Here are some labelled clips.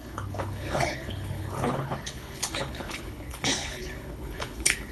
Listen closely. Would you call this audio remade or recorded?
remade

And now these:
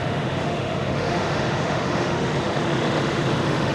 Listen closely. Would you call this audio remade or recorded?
remade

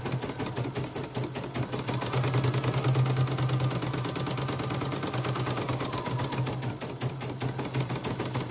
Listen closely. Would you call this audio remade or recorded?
recorded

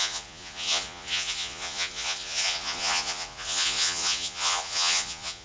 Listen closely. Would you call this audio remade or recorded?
remade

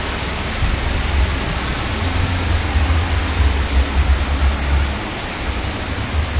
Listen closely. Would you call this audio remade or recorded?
recorded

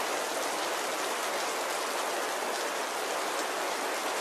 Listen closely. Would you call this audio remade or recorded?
recorded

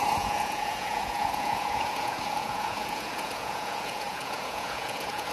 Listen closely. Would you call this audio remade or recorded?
remade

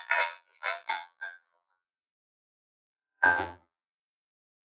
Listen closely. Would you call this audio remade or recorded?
remade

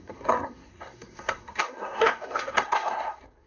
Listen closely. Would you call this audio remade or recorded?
remade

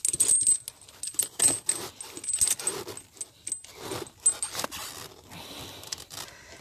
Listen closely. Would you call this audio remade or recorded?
recorded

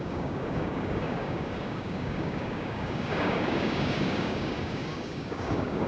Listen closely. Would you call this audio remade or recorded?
remade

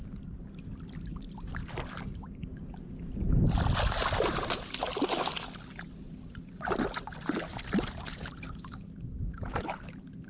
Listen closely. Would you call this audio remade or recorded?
recorded